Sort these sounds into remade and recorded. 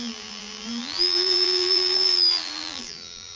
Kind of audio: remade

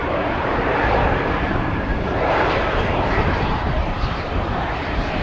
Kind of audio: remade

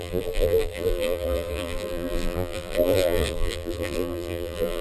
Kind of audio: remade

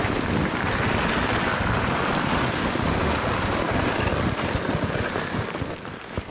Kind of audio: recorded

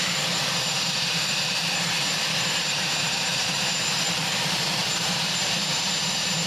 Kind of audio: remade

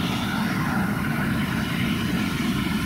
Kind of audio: recorded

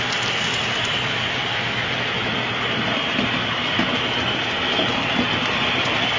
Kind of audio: remade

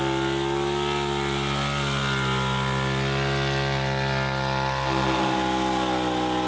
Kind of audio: recorded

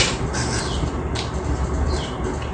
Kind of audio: recorded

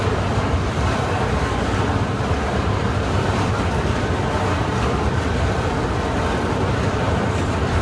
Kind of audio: remade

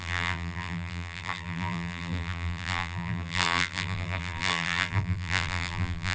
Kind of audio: remade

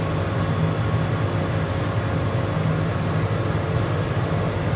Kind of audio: recorded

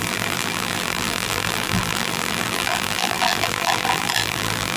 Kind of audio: remade